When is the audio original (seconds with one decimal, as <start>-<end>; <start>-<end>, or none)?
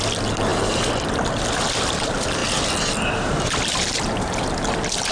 0.0-5.1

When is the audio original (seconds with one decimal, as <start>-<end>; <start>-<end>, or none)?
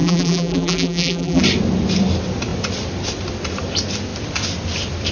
1.4-5.1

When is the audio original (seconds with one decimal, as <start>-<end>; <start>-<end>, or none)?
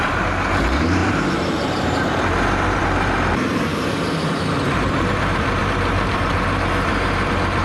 3.7-4.3